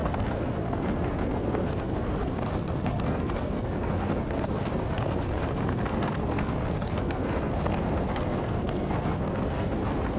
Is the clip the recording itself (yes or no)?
no